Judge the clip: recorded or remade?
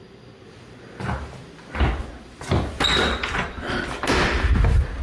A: recorded